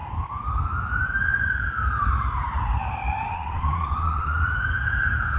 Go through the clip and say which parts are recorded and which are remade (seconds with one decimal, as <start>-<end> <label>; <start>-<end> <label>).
0.0-3.3 recorded; 3.3-4.5 remade; 4.5-5.4 recorded

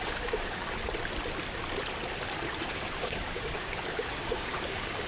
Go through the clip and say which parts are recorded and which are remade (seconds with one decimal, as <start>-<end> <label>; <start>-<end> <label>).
0.0-0.6 remade; 0.6-2.6 recorded; 2.6-5.1 remade

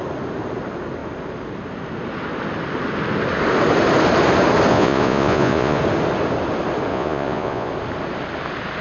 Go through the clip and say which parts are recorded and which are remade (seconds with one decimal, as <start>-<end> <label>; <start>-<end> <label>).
0.0-4.7 recorded; 4.7-5.8 remade; 5.8-6.9 recorded; 6.9-7.7 remade; 7.7-8.8 recorded